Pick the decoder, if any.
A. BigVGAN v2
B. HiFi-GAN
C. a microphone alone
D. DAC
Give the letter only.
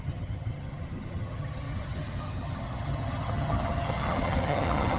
B